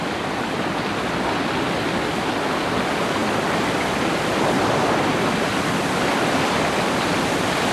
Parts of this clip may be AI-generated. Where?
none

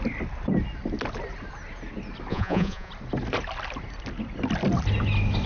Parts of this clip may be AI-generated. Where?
2.3-2.9 (vocoder, Vocos)

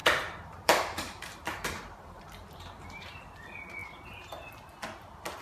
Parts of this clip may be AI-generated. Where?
0.0-3.2 (vocoder, BigVGAN v2); 3.8-4.5

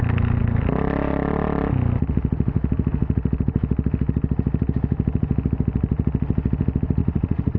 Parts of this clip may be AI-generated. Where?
7.0-7.6 (vocoder, Vocos)

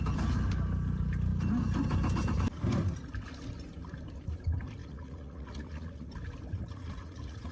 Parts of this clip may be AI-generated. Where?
4.8-6.1 (vocoder, Vocos); 6.5-7.5